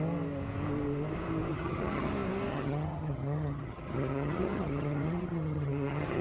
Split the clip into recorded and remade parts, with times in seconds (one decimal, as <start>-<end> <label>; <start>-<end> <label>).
0.0-1.5 recorded; 1.5-2.1 remade; 2.1-2.5 recorded; 2.5-6.2 remade